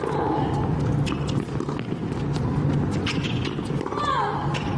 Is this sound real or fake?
real